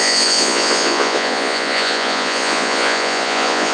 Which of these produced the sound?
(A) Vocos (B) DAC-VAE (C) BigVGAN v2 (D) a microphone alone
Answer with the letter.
A